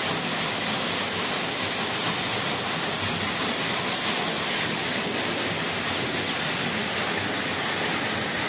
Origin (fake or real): real